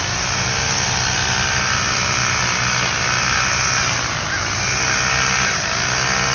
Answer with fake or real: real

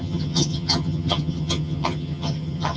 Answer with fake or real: fake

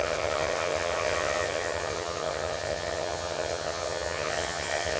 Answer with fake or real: fake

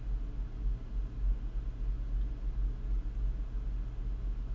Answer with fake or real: real